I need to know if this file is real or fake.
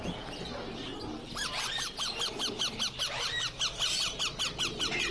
real